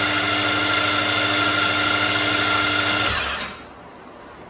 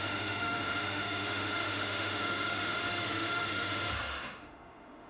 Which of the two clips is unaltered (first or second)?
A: first